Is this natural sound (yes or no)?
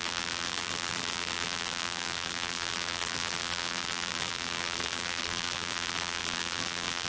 no